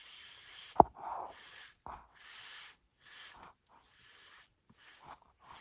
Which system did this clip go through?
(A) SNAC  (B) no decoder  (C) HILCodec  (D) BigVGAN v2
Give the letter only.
D